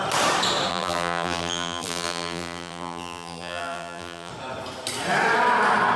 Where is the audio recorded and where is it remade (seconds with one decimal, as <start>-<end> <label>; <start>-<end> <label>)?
0.0-0.7 recorded; 0.7-4.3 remade; 4.3-6.0 recorded